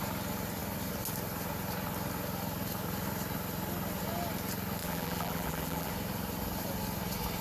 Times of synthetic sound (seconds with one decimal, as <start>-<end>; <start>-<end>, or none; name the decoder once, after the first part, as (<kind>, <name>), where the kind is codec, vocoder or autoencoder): 4.8-5.9 (vocoder, BigVGAN v2)